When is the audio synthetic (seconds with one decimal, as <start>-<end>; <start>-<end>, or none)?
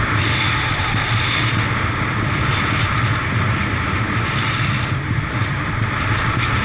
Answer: none